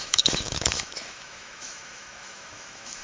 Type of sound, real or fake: fake